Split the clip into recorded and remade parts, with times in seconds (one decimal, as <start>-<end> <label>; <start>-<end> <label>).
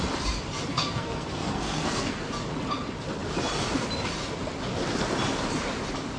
0.0-0.7 recorded; 0.7-2.3 remade; 2.3-6.2 recorded